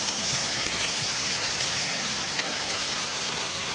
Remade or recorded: remade